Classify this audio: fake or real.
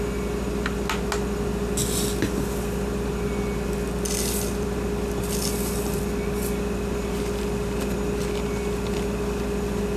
real